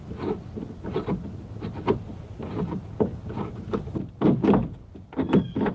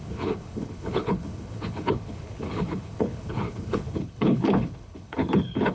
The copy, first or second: second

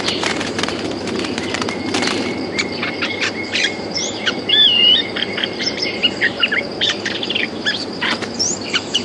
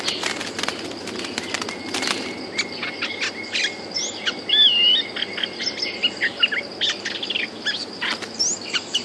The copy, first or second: first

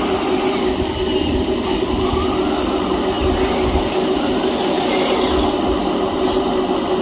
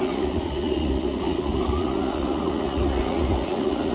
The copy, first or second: second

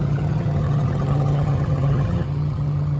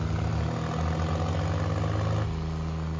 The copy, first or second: first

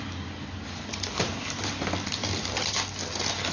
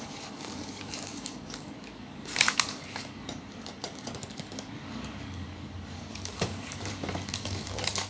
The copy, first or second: second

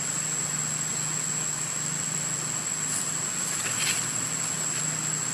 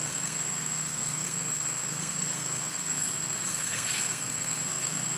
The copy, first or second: second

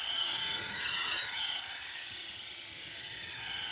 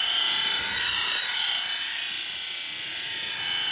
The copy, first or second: first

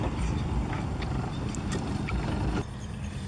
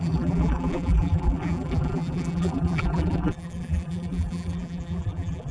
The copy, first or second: second